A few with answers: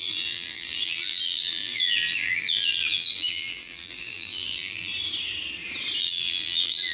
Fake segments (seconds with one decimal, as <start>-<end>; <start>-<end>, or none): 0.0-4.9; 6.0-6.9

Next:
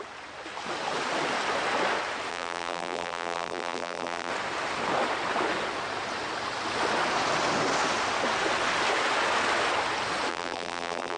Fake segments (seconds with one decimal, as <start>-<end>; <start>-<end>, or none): 2.3-4.3; 10.3-11.2

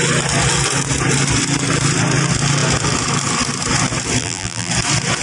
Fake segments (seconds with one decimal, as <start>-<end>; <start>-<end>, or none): 4.2-4.7